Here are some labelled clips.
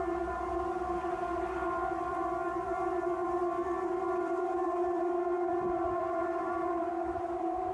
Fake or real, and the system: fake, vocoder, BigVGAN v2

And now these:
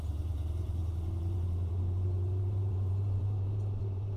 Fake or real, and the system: fake, vocoder, BigVGAN v2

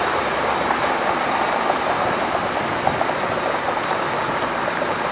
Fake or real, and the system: real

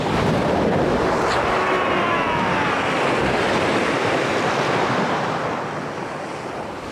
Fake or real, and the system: real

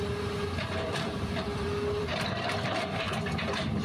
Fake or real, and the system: fake, vocoder, BigVGAN v2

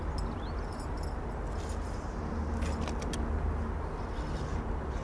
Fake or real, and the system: real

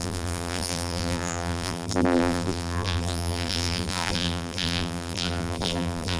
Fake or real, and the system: fake, vocoder, BigVGAN v2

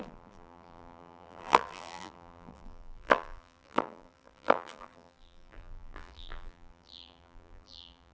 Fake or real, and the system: fake, vocoder, BigVGAN v2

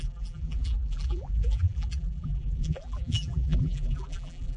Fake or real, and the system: fake, vocoder, BigVGAN v2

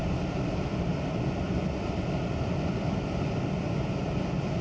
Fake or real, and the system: fake, vocoder, BigVGAN v2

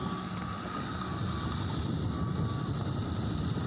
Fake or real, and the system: real